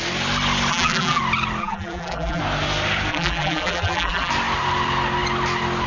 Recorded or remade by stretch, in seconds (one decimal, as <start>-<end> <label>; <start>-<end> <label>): 0.0-0.7 recorded; 0.7-1.2 remade; 1.2-1.6 recorded; 1.6-2.4 remade; 2.4-3.1 recorded; 3.1-4.3 remade; 4.3-5.9 recorded